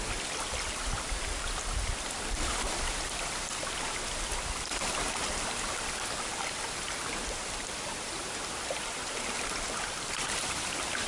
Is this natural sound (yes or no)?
yes